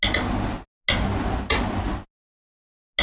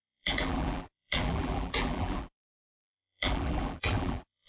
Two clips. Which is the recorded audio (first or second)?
first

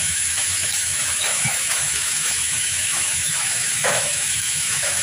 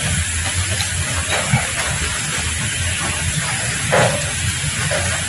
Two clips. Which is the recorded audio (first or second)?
second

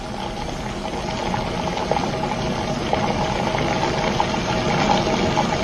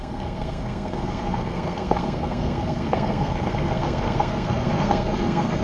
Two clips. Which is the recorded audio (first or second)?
first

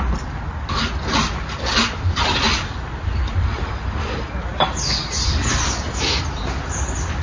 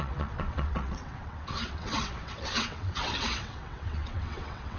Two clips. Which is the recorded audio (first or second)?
first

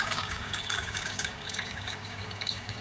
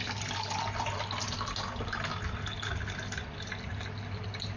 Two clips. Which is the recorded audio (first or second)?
second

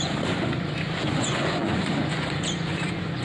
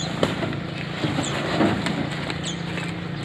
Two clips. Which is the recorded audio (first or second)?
second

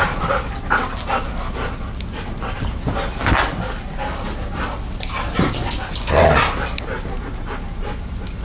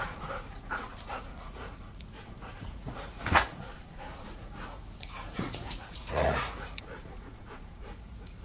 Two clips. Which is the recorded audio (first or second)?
first